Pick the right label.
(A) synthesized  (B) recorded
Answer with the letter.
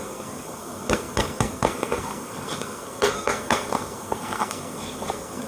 A